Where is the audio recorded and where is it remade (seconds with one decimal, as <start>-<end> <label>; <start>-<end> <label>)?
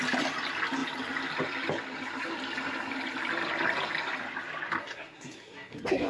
0.0-4.8 recorded; 4.8-6.1 remade